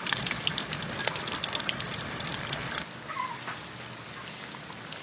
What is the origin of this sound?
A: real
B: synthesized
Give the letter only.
A